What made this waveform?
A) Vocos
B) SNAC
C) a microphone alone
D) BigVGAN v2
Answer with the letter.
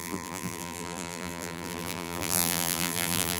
D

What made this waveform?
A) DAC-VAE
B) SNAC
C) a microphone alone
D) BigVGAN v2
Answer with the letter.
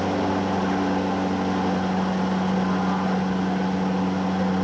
C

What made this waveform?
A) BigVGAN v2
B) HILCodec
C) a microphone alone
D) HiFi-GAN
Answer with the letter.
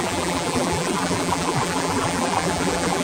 A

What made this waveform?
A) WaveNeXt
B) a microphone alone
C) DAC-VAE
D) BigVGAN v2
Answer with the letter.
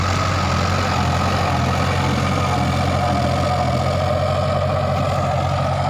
B